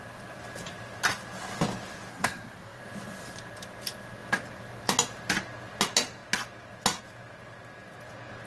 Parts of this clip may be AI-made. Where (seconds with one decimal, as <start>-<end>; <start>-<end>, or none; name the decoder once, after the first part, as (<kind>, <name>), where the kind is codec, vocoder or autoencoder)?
2.1-2.8 (codec, SNAC)